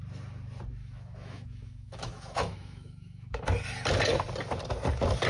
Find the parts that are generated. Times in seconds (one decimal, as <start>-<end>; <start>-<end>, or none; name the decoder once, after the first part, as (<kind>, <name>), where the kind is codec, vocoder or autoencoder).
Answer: 0.8-3.4 (autoencoder, DAC-VAE)